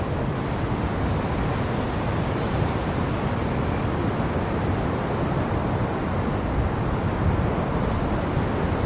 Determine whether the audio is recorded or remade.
recorded